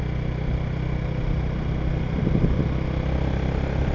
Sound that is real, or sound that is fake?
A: real